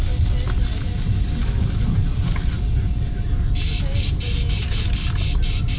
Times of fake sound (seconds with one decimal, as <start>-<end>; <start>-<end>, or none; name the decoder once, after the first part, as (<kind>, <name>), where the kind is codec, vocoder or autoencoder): none